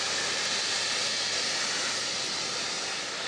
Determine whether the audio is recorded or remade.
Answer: recorded